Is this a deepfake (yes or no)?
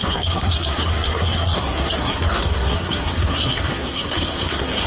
yes